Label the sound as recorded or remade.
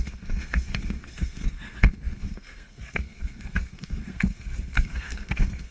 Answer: remade